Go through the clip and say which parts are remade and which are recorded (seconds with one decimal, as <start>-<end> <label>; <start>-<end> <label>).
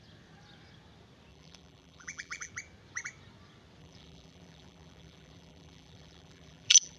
0.0-1.3 recorded; 1.3-2.5 remade; 2.5-3.8 recorded; 3.8-7.0 remade